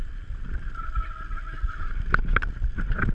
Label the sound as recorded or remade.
recorded